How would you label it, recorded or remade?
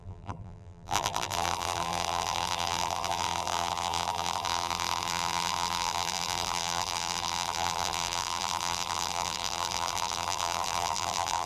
remade